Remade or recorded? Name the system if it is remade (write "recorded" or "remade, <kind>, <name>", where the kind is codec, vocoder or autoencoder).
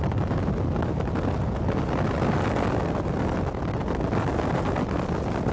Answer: recorded